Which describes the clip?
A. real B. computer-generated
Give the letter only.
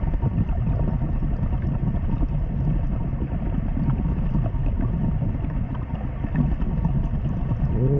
A